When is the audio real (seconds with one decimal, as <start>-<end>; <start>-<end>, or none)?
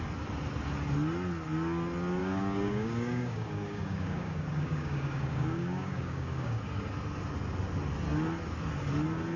0.0-2.2; 6.6-9.4